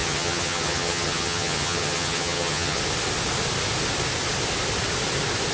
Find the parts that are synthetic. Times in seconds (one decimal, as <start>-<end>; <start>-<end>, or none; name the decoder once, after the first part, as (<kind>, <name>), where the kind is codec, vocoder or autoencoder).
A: 0.0-2.8 (vocoder, HiFi-GAN)